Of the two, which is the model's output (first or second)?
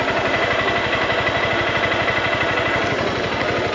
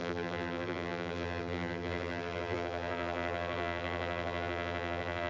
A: second